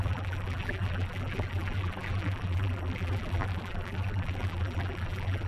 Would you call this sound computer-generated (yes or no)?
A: yes